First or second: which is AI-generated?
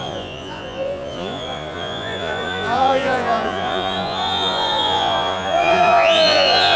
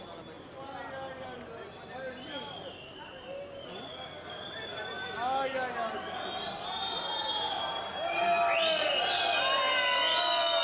first